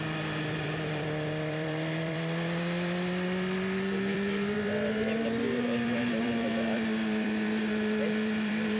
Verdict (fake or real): fake